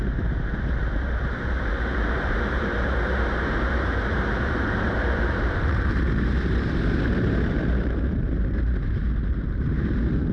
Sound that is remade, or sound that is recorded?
remade